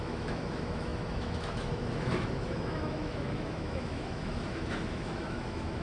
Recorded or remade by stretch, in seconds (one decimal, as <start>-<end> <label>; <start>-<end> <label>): 0.0-5.8 remade